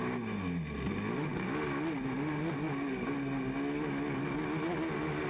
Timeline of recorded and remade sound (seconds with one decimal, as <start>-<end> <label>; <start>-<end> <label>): 0.0-5.3 recorded